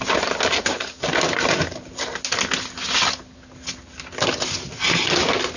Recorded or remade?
recorded